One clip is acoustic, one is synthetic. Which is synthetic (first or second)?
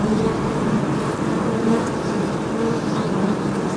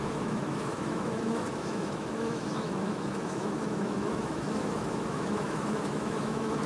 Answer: second